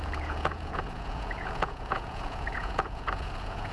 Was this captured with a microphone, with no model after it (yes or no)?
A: no